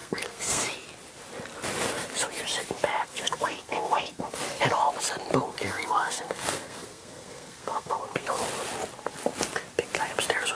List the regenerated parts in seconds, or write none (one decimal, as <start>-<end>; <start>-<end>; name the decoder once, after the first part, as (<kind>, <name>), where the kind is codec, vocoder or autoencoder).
0.0-0.6 (codec, SNAC); 3.0-4.4; 5.5-8.4